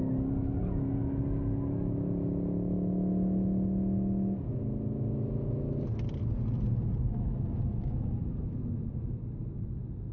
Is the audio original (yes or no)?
yes